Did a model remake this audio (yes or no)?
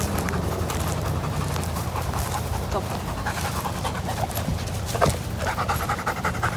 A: yes